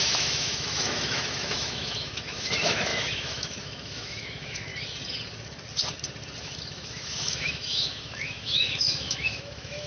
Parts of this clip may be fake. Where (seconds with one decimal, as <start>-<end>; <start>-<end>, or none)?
0.0-4.7; 6.4-9.9